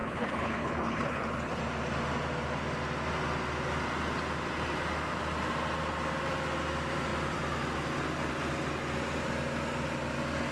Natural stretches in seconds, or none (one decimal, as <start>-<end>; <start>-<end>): 1.6-10.5

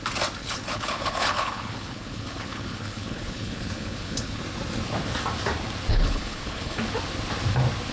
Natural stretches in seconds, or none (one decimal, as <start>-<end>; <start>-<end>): 0.0-0.4; 4.4-5.9; 6.8-7.9

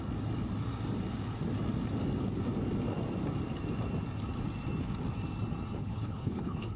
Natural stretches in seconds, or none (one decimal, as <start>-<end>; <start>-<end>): 0.0-5.8

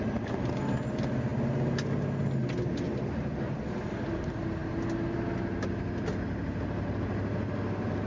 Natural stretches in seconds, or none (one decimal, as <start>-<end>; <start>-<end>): 0.0-8.1

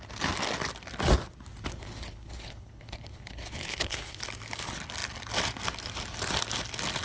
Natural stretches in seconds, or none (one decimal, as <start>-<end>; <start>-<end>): 0.0-1.7; 4.2-7.0